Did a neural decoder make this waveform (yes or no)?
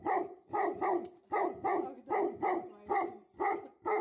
no